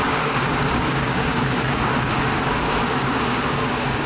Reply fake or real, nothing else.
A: fake